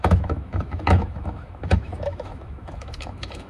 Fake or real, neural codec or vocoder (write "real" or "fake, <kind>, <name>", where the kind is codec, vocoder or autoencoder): fake, autoencoder, DAC-VAE